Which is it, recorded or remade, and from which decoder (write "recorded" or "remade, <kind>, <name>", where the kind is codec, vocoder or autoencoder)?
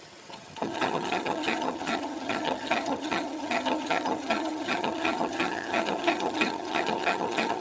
remade, vocoder, HiFi-GAN